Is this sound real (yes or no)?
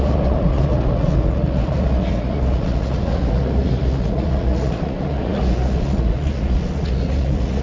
no